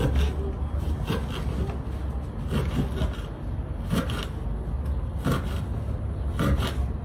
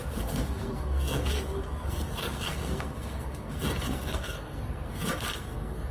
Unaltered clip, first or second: first